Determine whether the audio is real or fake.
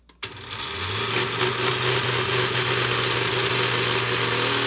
real